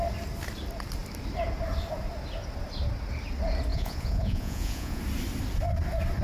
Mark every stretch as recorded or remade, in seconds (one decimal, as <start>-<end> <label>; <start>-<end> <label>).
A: 0.0-3.7 recorded; 3.7-5.0 remade; 5.0-6.2 recorded